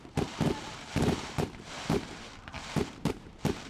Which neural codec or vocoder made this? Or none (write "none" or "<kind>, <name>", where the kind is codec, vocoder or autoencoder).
vocoder, BigVGAN v2